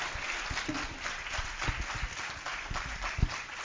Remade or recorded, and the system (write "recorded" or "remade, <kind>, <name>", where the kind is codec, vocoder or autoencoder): recorded